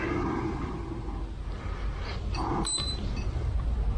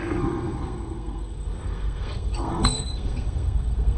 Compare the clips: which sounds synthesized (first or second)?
second